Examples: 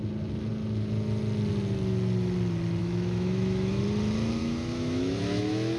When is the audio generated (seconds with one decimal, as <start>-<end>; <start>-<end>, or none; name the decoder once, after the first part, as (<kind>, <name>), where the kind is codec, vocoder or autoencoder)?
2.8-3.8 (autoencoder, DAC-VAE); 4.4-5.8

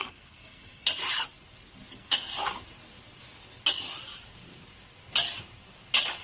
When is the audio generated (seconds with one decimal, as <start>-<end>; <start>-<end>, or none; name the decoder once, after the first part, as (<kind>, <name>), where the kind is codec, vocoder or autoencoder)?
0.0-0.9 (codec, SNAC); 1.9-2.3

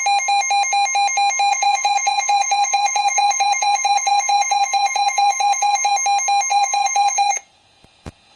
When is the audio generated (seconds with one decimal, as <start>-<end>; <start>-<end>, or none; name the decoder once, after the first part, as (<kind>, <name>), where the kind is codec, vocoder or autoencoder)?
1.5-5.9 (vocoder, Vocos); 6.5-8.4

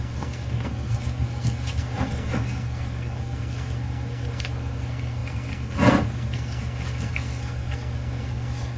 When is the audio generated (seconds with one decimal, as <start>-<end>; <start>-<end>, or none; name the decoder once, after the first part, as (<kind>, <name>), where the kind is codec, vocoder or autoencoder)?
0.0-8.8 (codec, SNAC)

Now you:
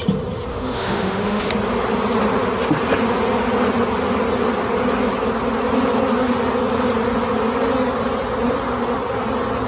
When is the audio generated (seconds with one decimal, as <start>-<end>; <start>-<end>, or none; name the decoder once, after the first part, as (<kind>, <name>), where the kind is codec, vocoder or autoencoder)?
0.5-1.5 (autoencoder, DAC-VAE)

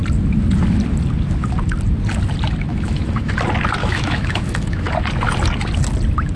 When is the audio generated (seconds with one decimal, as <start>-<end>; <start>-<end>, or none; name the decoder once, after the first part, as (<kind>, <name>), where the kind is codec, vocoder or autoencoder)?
2.7-3.3 (autoencoder, DAC-VAE); 3.8-4.9